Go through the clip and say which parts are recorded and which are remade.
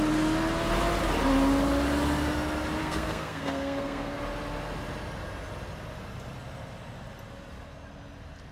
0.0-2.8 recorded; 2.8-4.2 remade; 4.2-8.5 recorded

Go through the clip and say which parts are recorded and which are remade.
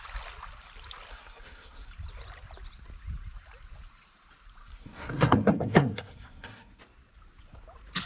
0.0-1.1 recorded; 1.1-1.9 remade; 1.9-4.6 recorded; 4.6-6.8 remade; 6.8-8.1 recorded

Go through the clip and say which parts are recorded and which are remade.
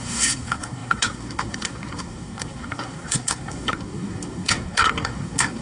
0.0-5.6 remade